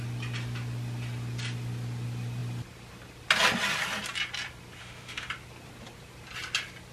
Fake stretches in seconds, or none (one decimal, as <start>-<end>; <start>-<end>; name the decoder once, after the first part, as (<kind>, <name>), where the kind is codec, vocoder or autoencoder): 4.8-5.3 (autoencoder, DAC-VAE)